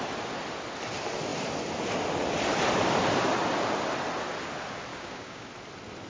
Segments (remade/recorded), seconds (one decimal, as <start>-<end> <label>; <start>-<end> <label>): 0.0-4.9 recorded; 4.9-5.5 remade; 5.5-6.1 recorded